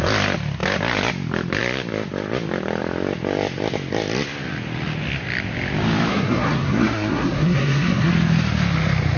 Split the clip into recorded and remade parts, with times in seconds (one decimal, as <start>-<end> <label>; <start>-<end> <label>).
0.0-6.1 recorded; 6.1-8.1 remade; 8.1-9.2 recorded